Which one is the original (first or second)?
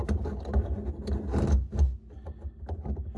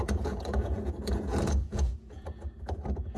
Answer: first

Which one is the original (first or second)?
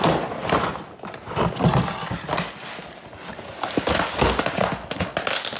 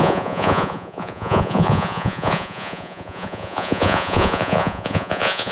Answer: first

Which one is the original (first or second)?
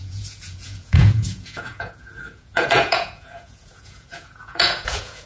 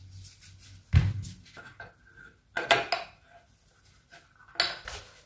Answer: second